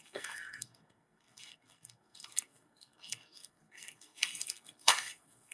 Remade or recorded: remade